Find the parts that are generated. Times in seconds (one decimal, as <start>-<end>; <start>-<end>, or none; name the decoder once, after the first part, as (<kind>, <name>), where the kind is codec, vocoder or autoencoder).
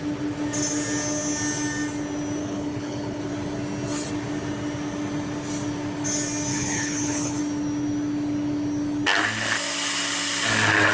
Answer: 2.4-3.3 (codec, HILCodec); 6.5-7.4